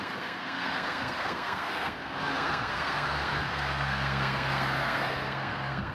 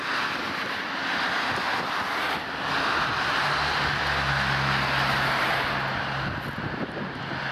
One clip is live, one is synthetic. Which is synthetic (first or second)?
first